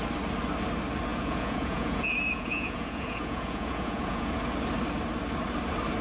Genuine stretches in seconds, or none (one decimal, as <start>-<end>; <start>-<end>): 0.0-1.1; 4.3-6.0